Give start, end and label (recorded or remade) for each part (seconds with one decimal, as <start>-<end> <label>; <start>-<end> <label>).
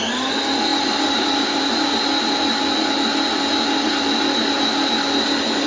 0.0-0.7 recorded; 0.7-1.9 remade; 1.9-5.7 recorded